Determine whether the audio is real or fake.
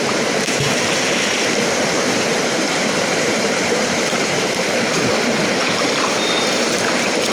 fake